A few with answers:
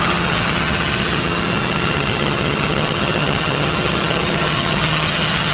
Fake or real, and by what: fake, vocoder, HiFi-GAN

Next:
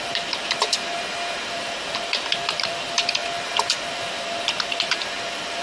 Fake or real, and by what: fake, vocoder, BigVGAN v2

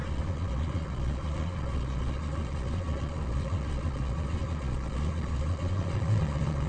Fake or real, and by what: fake, vocoder, Vocos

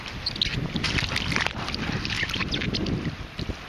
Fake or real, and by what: real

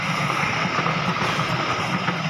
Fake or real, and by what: real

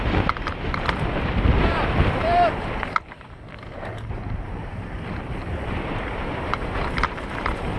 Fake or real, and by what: fake, vocoder, BigVGAN v2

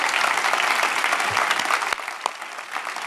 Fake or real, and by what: real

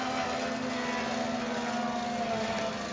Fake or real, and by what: real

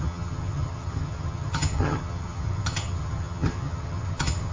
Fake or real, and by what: fake, vocoder, HiFi-GAN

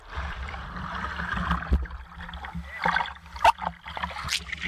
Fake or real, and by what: real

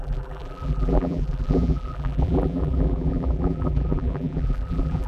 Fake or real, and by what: fake, vocoder, BigVGAN v2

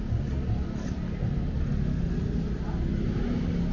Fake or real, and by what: real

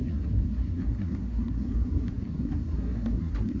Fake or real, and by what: fake, codec, SNAC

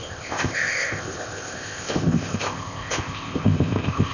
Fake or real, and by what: fake, codec, ZipCodec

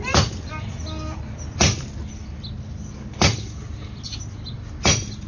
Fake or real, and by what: real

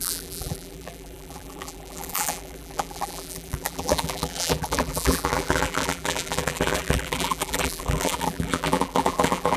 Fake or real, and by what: fake, vocoder, BigVGAN v2